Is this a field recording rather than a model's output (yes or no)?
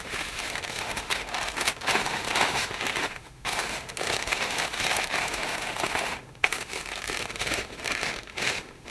no